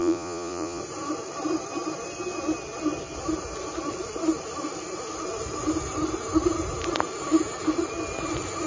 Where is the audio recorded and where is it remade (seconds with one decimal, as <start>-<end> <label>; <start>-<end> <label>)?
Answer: 0.0-0.8 remade; 0.8-8.7 recorded